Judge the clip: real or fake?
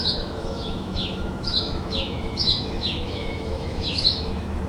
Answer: fake